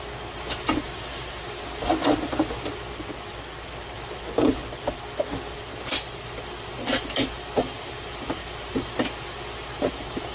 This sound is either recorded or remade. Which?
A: recorded